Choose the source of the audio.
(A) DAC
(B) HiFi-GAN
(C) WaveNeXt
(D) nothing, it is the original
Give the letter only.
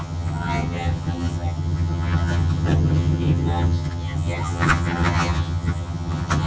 B